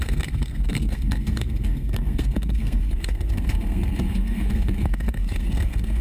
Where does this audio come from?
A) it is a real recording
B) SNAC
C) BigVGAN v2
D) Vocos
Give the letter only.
B